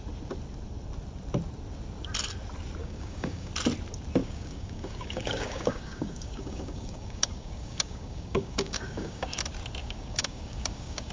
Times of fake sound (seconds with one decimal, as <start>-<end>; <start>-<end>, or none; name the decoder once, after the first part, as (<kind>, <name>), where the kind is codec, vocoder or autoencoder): 2.8-3.5 (codec, DAC); 4.2-9.4; 9.8-11.1